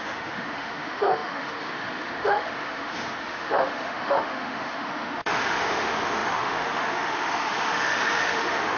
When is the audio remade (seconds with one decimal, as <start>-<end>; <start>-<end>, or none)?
0.0-8.8